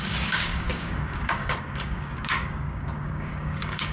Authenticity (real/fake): fake